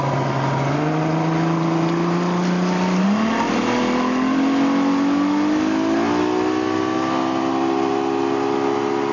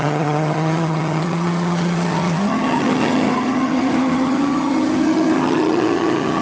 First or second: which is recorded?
first